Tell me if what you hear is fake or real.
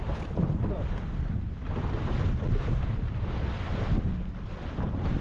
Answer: real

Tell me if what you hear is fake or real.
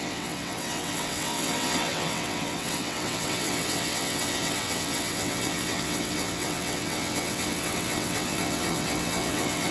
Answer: fake